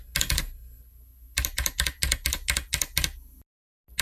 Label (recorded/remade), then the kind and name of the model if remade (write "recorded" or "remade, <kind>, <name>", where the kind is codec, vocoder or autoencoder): recorded